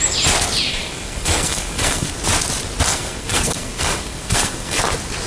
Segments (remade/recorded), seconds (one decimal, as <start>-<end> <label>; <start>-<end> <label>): 0.0-0.7 recorded; 0.7-2.1 remade; 2.1-2.9 recorded; 2.9-4.8 remade; 4.8-5.3 recorded